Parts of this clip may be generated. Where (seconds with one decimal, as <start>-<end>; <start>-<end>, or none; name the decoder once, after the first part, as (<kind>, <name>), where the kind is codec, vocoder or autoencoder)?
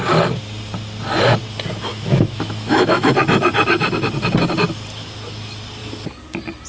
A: 1.9-3.1 (autoencoder, DAC-VAE)